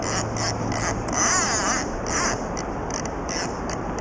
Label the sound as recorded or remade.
recorded